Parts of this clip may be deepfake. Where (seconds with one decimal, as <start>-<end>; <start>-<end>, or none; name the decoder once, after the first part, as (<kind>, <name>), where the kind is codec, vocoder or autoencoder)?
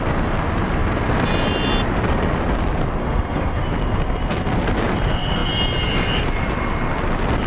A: 3.0-3.6 (autoencoder, DAC-VAE)